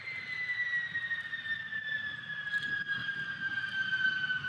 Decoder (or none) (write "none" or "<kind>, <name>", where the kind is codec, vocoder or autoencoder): none